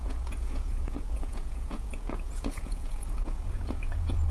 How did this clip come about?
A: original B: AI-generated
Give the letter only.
B